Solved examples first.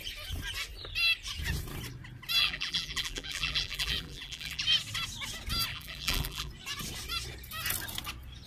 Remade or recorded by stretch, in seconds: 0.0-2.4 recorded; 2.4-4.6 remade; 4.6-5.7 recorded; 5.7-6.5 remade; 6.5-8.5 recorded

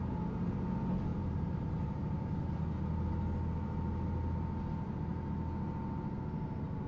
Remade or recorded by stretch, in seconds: 0.0-1.1 recorded; 1.1-2.3 remade; 2.3-6.9 recorded

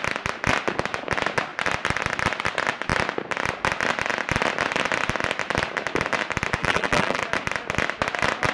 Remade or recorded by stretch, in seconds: 0.0-6.6 recorded; 6.6-7.2 remade; 7.2-8.5 recorded

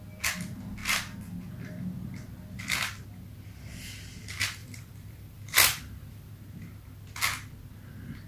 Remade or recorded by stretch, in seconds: 0.0-4.6 recorded; 4.6-6.3 remade; 6.3-8.3 recorded

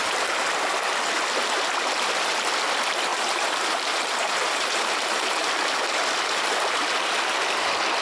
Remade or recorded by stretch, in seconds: 0.0-3.1 recorded; 3.1-5.5 remade; 5.5-8.0 recorded